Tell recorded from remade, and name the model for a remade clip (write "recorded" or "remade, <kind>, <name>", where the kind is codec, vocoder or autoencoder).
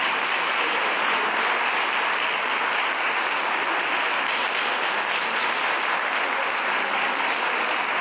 recorded